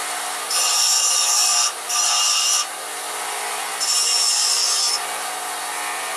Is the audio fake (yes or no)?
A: no